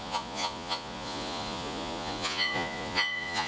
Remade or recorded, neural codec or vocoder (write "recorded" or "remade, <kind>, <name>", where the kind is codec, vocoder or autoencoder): remade, vocoder, Vocos